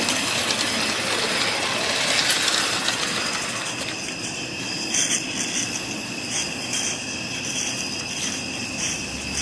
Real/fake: real